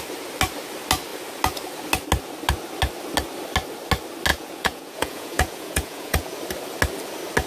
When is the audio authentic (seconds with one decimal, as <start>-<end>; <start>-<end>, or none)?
0.0-4.3; 6.4-7.5

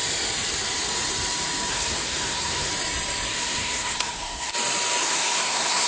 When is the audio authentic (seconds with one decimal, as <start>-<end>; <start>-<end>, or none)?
0.0-1.7; 2.7-3.3; 4.5-5.0

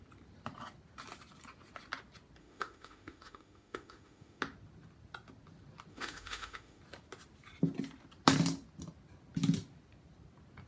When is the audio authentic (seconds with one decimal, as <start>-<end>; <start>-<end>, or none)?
0.0-2.4; 4.4-5.9; 6.8-10.7

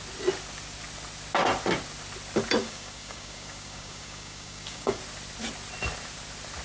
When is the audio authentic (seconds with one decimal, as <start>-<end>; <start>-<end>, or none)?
0.0-2.6; 5.0-6.6

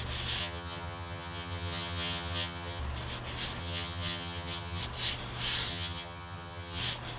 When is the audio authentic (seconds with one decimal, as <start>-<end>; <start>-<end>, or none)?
0.0-0.4; 2.8-3.6; 4.8-5.7; 6.8-7.2

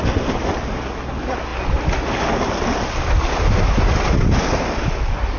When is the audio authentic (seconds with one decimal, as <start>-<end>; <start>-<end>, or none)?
0.0-5.4

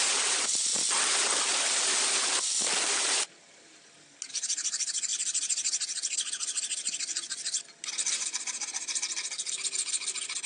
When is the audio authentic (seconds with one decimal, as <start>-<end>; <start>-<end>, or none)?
0.0-10.5

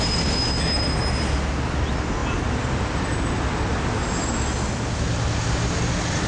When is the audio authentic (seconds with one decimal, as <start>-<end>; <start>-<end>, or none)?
0.0-6.3